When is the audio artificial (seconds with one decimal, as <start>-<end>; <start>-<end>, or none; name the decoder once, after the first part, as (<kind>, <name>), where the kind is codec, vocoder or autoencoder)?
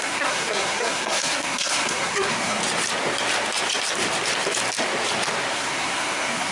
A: 0.0-2.6 (codec, SNAC); 5.5-6.5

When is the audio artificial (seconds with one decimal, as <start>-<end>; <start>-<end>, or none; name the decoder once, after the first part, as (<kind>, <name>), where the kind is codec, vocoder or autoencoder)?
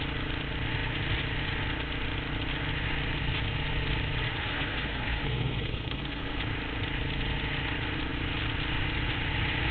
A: 4.4-6.4 (codec, SNAC)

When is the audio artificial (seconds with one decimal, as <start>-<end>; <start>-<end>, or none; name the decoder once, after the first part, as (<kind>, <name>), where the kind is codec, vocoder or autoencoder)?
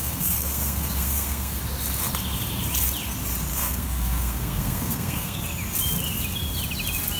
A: 0.0-1.6 (codec, SNAC); 3.5-5.4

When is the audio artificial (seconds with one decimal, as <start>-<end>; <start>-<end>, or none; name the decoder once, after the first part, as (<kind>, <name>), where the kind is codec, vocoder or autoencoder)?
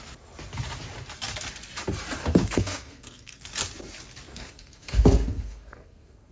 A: 2.2-3.4 (codec, SNAC); 4.3-6.3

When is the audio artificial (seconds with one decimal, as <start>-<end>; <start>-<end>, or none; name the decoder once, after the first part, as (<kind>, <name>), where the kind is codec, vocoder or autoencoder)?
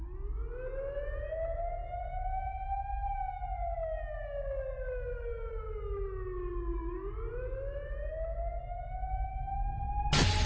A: none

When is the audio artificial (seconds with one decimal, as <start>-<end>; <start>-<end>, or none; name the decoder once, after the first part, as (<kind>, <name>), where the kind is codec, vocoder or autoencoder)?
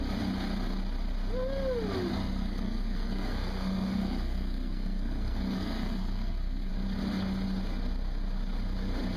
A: 2.1-6.7 (codec, SNAC)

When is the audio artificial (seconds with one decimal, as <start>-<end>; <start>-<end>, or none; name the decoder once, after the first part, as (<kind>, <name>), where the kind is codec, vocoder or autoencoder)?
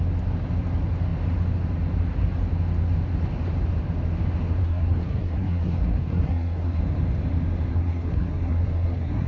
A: 4.6-6.8 (codec, SNAC); 7.7-9.3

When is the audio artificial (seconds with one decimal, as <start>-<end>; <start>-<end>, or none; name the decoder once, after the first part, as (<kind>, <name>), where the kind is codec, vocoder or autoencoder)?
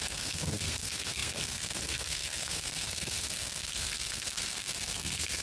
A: 0.0-5.4 (codec, SNAC)